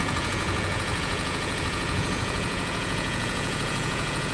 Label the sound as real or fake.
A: fake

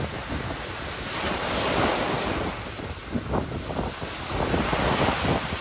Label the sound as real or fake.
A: real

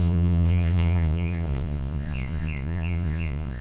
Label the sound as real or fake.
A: fake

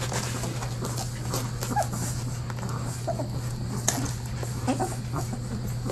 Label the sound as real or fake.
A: real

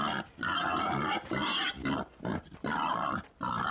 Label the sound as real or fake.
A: real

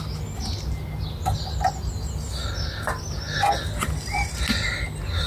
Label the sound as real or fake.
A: real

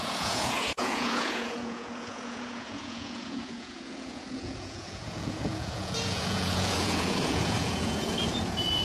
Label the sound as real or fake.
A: fake